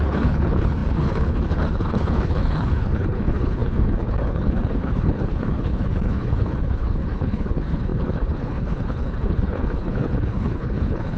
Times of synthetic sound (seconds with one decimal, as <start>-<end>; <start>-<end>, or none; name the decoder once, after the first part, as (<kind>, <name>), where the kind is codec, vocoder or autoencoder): 0.0-11.2 (codec, HILCodec)